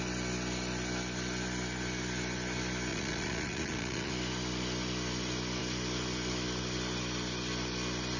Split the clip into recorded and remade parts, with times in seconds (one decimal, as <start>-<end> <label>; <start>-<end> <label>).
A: 0.0-2.9 recorded; 2.9-4.1 remade; 4.1-8.2 recorded